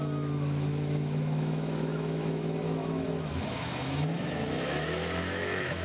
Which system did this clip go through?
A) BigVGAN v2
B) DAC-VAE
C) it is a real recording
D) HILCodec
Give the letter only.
B